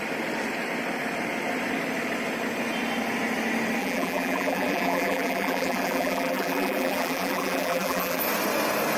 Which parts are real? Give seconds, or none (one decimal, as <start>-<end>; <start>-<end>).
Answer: 0.0-3.8; 8.2-9.0